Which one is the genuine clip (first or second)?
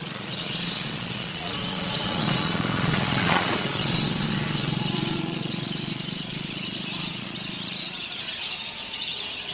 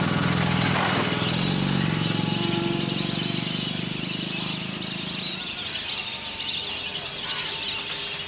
second